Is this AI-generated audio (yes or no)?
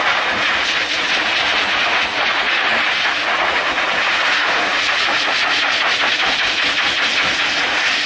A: yes